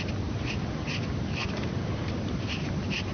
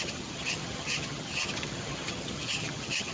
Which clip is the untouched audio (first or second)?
first